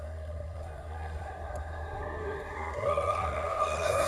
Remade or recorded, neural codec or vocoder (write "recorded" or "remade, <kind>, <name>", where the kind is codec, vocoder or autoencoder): remade, codec, SNAC